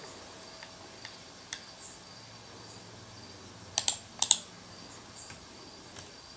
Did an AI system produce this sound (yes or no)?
no